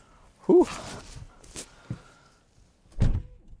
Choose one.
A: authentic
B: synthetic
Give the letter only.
A